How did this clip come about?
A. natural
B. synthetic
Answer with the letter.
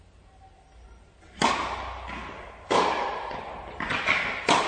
A